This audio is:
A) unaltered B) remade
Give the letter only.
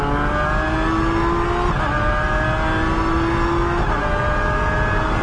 A